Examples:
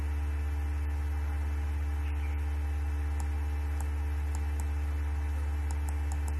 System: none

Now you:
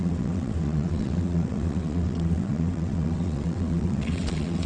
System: vocoder, WaveNeXt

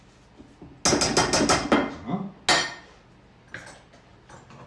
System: none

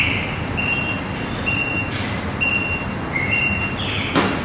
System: none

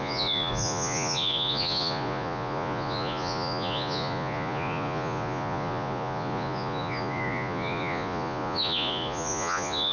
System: vocoder, Vocos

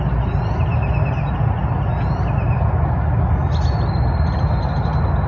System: none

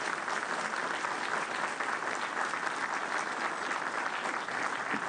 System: none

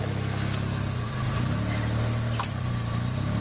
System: none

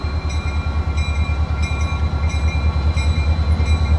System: none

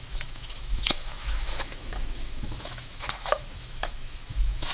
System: autoencoder, DAC-VAE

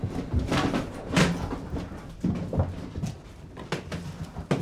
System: none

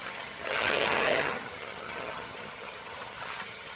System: vocoder, HiFi-GAN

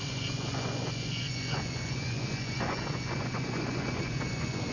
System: vocoder, Vocos